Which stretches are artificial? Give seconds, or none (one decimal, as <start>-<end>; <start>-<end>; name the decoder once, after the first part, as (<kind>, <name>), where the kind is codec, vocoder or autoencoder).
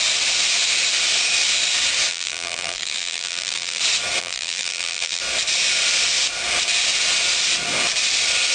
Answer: 2.1-3.8 (vocoder, BigVGAN v2); 4.2-5.2